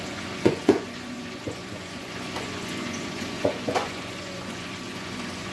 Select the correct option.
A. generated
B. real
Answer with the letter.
A